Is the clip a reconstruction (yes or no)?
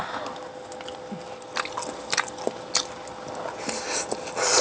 no